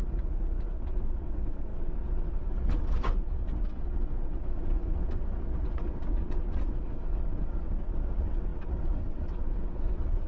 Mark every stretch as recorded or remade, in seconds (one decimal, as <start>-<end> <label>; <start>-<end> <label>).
0.0-0.7 recorded; 0.7-10.3 remade